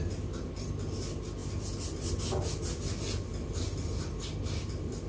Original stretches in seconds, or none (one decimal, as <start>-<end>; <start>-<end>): 0.0-5.1